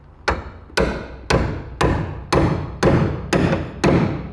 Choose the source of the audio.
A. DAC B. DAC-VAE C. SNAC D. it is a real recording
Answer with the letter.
D